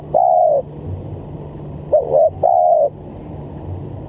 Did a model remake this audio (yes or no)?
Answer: no